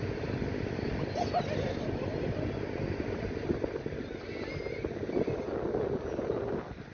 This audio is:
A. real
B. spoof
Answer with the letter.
A